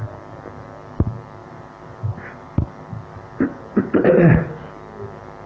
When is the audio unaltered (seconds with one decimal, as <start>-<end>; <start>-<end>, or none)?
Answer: 0.0-1.4; 4.7-5.5